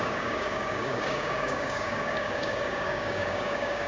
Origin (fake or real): fake